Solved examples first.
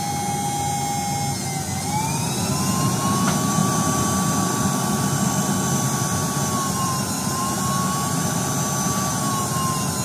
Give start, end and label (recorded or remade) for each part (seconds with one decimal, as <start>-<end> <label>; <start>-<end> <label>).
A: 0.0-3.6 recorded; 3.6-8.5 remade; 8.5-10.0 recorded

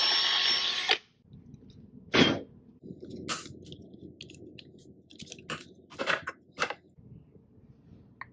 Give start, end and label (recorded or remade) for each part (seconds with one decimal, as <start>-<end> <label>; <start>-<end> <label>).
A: 0.0-8.3 recorded

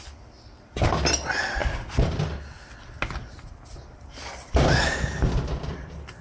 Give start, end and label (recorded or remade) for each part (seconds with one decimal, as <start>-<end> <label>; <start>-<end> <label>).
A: 0.0-6.2 recorded